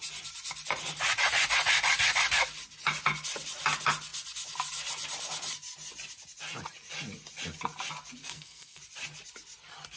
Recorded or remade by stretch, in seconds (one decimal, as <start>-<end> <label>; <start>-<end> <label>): 0.0-8.2 recorded; 8.2-8.8 remade; 8.8-10.0 recorded